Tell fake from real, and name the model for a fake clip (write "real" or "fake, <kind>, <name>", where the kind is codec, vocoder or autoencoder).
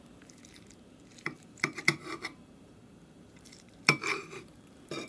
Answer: fake, vocoder, BigVGAN v2